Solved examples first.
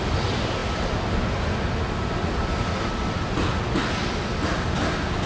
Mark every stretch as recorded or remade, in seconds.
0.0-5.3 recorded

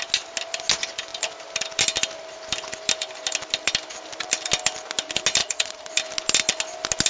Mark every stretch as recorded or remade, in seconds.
0.0-5.4 recorded; 5.4-5.9 remade; 5.9-7.1 recorded

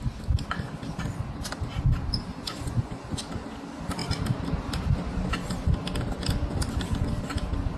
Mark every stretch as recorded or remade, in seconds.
0.0-2.3 recorded; 2.3-3.0 remade; 3.0-7.8 recorded

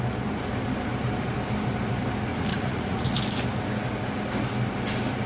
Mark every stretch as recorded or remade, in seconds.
0.0-2.3 recorded; 2.3-3.2 remade; 3.2-5.3 recorded

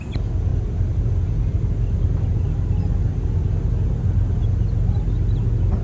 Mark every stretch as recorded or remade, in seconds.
0.0-5.8 recorded

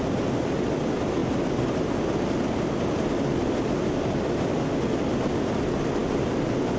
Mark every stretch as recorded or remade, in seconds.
0.0-6.8 recorded

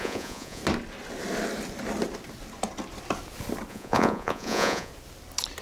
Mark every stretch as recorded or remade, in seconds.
0.0-0.6 remade; 0.6-3.7 recorded; 3.7-4.9 remade; 4.9-5.6 recorded